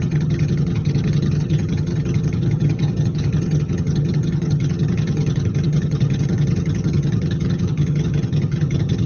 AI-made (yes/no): yes